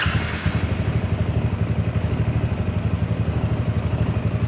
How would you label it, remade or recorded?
recorded